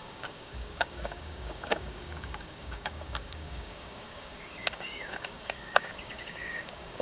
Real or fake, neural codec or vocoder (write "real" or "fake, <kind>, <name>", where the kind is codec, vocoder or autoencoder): fake, codec, DAC